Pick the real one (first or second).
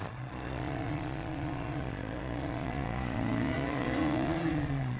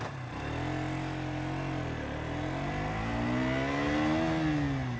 second